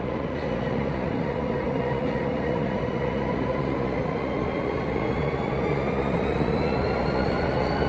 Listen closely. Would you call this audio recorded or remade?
remade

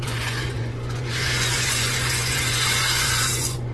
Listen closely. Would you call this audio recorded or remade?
remade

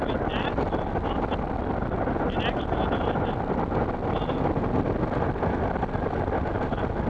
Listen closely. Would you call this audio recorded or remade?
recorded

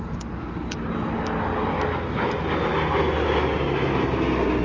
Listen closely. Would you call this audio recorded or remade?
recorded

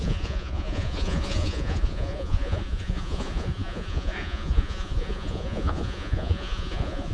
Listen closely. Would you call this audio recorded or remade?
remade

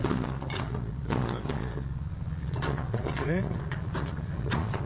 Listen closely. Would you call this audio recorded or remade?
remade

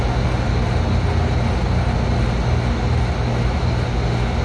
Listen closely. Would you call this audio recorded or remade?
recorded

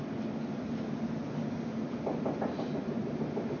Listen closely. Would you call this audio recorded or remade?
recorded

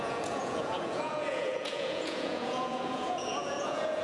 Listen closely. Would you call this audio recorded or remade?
remade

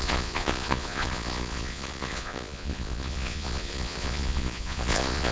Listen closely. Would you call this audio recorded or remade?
remade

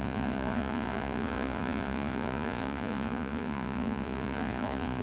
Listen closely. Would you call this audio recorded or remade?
remade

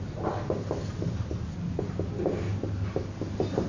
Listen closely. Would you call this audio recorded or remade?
recorded